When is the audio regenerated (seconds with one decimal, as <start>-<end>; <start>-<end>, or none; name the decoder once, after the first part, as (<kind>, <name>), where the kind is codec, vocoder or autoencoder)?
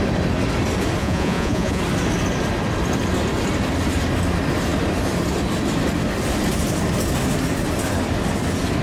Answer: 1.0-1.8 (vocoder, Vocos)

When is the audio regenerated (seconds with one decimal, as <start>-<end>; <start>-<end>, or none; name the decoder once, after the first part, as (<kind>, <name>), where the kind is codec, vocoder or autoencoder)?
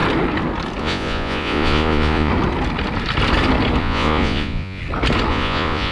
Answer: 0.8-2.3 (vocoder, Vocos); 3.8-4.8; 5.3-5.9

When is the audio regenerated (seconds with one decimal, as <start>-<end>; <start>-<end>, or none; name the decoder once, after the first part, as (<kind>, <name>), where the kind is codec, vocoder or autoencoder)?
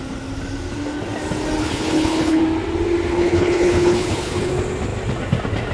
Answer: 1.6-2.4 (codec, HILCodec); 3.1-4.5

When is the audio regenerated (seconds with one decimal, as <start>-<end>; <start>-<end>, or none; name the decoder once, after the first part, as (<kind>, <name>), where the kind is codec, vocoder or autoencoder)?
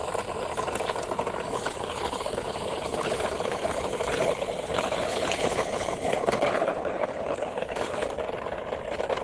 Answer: 1.5-8.0 (codec, HILCodec)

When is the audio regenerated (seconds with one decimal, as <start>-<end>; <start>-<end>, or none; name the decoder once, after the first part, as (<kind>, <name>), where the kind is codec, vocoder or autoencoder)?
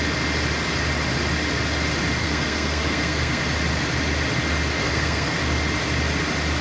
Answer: 2.2-3.4 (codec, SNAC); 4.8-5.4